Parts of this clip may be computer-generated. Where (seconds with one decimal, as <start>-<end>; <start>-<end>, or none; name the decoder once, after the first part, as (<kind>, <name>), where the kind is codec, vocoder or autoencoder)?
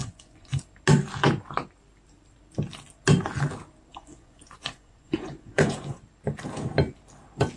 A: 0.0-0.6 (vocoder, Vocos); 3.9-6.0